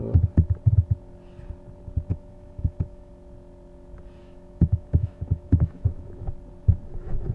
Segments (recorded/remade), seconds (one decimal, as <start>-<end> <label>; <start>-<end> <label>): 0.0-2.1 recorded; 2.1-3.1 remade; 3.1-4.2 recorded; 4.2-6.3 remade; 6.3-7.3 recorded